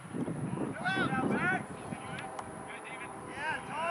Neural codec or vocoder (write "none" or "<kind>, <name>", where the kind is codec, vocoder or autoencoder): vocoder, BigVGAN v2